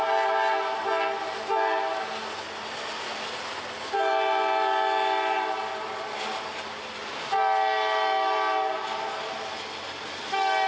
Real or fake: real